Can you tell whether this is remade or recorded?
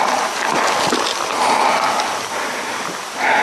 recorded